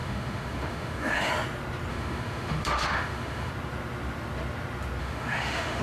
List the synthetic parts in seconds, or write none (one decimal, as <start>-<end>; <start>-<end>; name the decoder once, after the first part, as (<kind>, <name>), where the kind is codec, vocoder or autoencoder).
0.0-1.3 (autoencoder, DAC-VAE); 1.9-3.5; 5.0-5.8